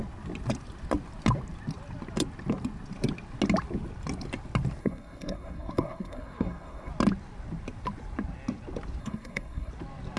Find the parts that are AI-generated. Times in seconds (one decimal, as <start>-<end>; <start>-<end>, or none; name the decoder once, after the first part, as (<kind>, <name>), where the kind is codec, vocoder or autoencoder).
4.8-6.9 (codec, SNAC); 9.0-9.7